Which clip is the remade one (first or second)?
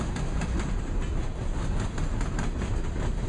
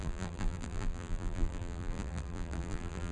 second